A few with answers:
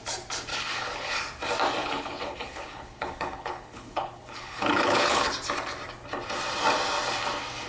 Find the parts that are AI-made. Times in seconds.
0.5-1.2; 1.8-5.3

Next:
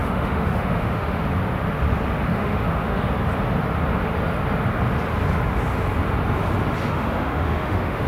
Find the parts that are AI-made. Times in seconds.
0.0-1.2; 2.3-3.1; 6.8-8.1